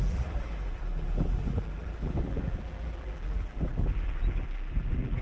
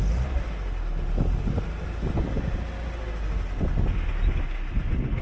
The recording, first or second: second